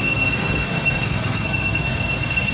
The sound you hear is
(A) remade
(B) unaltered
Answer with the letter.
A